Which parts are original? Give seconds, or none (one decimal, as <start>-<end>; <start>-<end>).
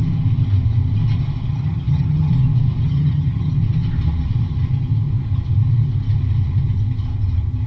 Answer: 0.0-1.5; 2.3-2.8; 3.5-7.7